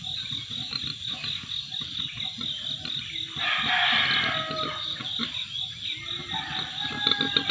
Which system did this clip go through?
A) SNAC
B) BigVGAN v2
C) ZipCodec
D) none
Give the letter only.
D